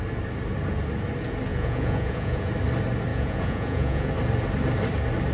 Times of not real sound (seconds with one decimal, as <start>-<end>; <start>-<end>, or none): 1.5-2.5; 3.1-4.1